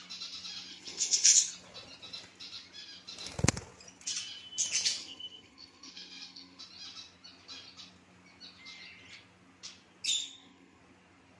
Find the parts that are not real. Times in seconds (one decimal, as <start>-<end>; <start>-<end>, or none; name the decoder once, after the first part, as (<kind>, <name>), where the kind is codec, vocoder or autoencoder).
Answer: 0.7-1.5 (codec, SNAC); 5.0-6.6; 10.2-10.8